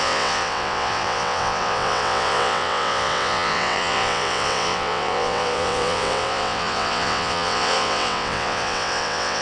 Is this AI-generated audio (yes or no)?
yes